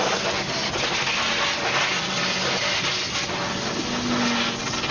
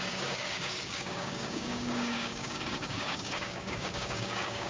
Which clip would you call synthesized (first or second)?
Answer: second